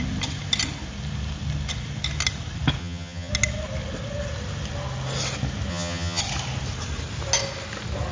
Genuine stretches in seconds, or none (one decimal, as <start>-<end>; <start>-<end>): 0.0-2.8; 3.3-5.7; 6.2-8.1